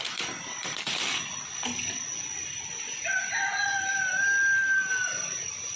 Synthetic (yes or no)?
no